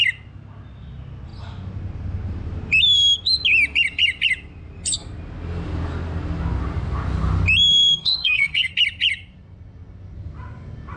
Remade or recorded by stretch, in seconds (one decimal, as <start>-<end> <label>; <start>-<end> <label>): 0.0-7.7 recorded; 7.7-8.7 remade; 8.7-11.0 recorded